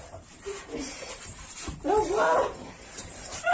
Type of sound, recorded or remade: remade